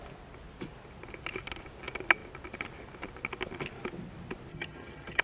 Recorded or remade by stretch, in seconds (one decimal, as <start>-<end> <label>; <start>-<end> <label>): 0.0-4.5 recorded; 4.5-5.2 remade